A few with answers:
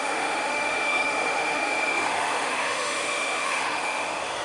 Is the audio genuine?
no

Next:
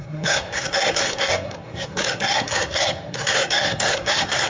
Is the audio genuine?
no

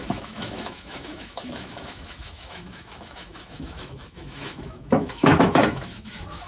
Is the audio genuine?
no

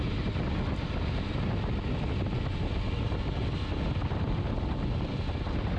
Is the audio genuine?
yes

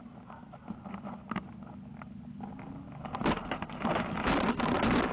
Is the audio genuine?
yes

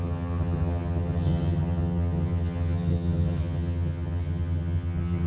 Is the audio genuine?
no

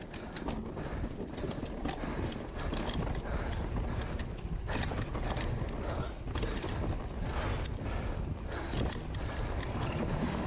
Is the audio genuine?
yes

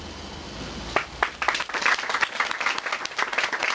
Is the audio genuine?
yes